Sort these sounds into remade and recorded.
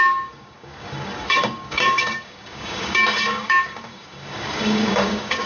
remade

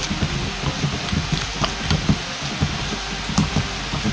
recorded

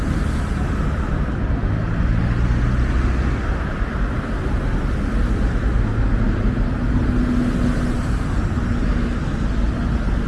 recorded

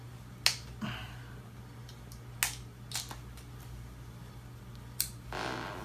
recorded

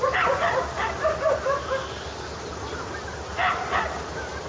recorded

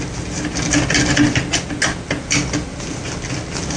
recorded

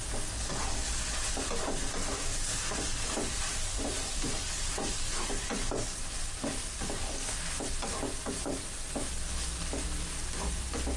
recorded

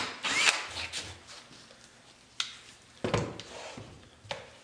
recorded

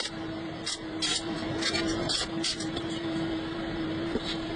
remade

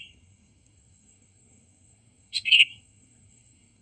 remade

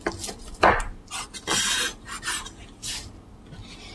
recorded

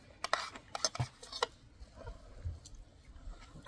recorded